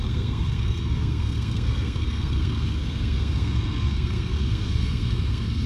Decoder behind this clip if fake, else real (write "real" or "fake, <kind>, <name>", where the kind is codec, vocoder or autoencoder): fake, codec, SNAC